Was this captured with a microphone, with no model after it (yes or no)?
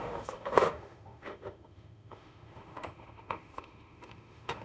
no